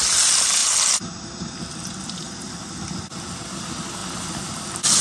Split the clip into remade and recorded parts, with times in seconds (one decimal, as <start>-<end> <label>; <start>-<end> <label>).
0.0-5.0 recorded